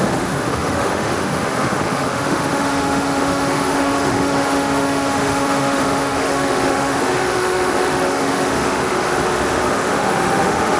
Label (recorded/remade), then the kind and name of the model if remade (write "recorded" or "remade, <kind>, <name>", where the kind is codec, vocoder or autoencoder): remade, autoencoder, DAC-VAE